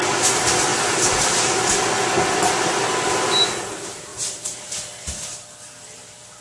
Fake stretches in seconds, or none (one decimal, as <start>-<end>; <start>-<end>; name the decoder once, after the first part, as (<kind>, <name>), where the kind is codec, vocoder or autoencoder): 0.7-1.6 (vocoder, BigVGAN v2); 4.1-4.7